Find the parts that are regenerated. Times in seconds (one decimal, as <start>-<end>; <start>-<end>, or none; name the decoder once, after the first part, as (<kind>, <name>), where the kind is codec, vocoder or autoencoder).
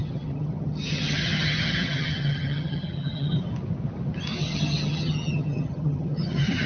0.0-3.3 (vocoder, HiFi-GAN); 4.4-6.7